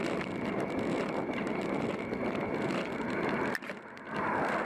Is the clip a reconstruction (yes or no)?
no